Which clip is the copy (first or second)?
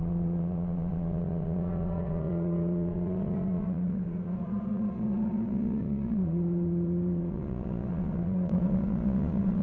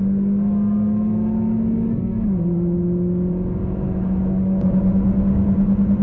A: first